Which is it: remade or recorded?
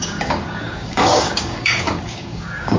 remade